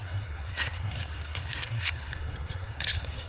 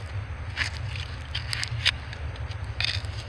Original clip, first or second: second